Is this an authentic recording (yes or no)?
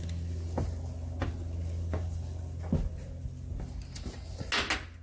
yes